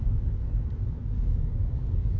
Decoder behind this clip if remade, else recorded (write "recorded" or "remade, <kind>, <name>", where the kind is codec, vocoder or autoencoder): remade, codec, DAC